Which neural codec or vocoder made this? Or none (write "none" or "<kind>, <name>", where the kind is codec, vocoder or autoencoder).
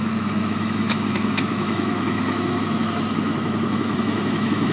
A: autoencoder, DAC-VAE